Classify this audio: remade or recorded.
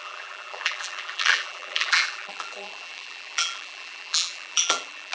remade